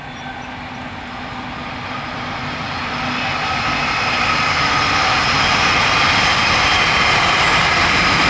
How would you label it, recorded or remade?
recorded